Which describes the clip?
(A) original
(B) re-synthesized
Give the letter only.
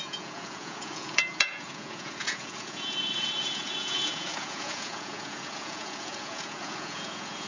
B